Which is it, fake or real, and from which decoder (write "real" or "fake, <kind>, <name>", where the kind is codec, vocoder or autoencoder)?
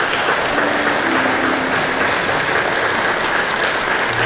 real